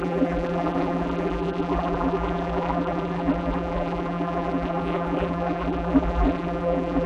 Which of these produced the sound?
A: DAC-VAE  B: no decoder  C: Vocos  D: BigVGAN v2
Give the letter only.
D